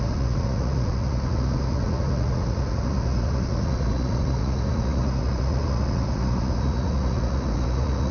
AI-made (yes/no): yes